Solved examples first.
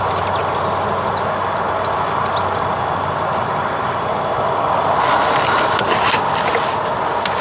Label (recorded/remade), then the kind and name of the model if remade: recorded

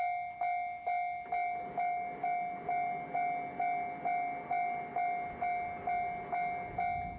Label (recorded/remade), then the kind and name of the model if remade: recorded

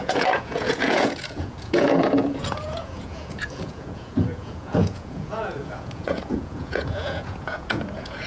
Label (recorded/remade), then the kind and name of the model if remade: remade, vocoder, Vocos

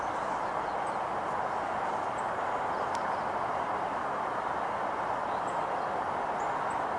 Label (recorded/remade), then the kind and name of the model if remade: recorded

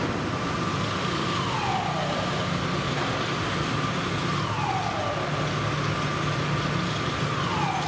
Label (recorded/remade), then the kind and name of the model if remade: recorded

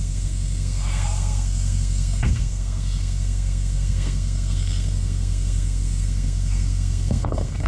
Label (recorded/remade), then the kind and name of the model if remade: remade, codec, SNAC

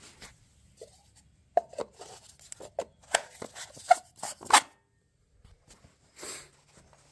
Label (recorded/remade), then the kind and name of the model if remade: recorded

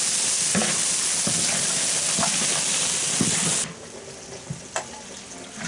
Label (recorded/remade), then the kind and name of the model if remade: recorded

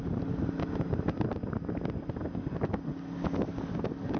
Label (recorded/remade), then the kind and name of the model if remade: recorded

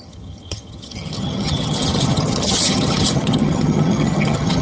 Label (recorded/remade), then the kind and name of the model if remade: remade, vocoder, HiFi-GAN